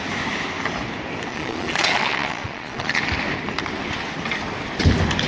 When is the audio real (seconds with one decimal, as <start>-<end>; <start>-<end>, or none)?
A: 0.0-1.3; 3.0-5.3

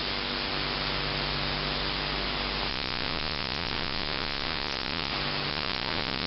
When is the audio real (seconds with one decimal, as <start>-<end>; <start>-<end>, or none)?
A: 0.0-2.7; 5.1-5.5

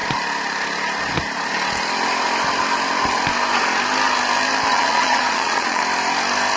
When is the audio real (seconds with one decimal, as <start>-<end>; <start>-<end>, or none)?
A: 0.0-4.7; 5.8-6.6

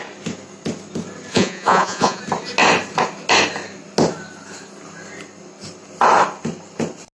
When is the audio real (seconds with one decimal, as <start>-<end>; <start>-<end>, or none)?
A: 0.0-1.3; 2.2-7.1